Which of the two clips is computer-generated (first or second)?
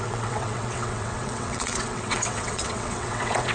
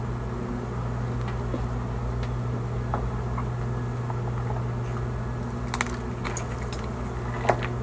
first